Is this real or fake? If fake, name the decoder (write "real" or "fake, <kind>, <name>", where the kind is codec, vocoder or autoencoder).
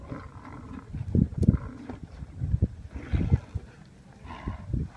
real